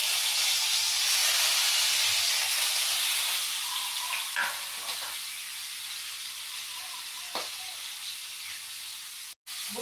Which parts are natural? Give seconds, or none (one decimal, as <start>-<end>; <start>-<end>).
0.0-9.8